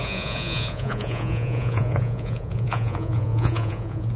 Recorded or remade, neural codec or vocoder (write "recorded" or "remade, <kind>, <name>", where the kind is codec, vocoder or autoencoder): remade, vocoder, Vocos